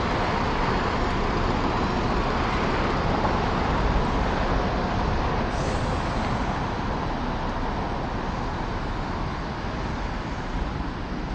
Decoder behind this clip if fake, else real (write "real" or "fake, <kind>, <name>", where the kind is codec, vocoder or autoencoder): real